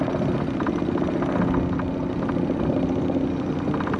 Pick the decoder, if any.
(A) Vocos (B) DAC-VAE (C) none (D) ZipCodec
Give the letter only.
C